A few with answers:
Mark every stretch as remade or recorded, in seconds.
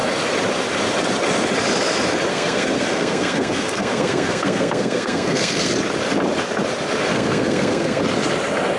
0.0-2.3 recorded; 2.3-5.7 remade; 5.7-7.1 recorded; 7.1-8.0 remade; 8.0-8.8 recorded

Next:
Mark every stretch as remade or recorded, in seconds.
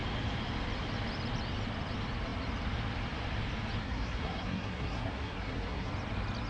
0.0-3.8 recorded; 3.8-5.9 remade; 5.9-6.5 recorded